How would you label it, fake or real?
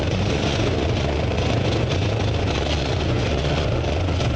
fake